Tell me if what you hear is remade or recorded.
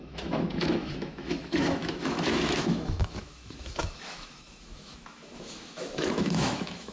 remade